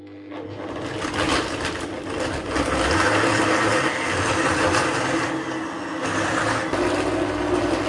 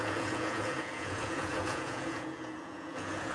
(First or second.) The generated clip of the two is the second